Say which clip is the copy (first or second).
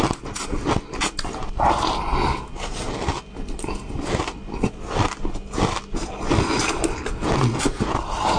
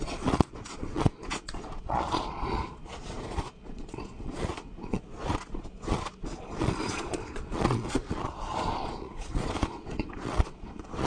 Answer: second